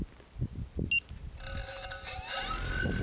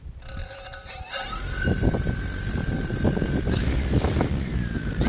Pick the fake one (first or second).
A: second